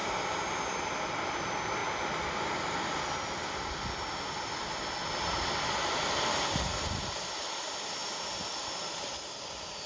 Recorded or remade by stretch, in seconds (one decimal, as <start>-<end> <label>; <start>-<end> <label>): 0.0-1.4 recorded; 1.4-1.8 remade; 1.8-6.3 recorded; 6.3-8.0 remade; 8.0-8.5 recorded; 8.5-9.9 remade